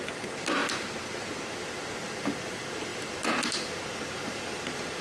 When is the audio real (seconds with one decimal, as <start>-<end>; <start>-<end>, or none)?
0.0-5.0